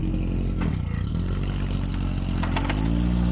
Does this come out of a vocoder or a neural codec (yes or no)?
no